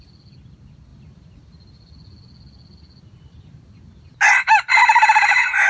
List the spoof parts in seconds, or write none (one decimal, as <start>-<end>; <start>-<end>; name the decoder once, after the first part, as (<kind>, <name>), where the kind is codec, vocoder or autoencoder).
none